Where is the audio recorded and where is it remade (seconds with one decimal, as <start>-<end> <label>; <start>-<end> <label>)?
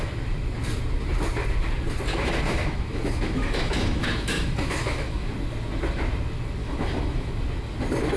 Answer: 0.0-2.1 recorded; 2.1-5.3 remade; 5.3-6.6 recorded; 6.6-7.3 remade; 7.3-8.2 recorded